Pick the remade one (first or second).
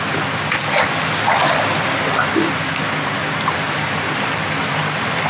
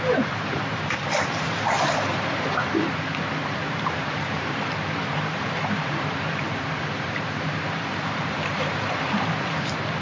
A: second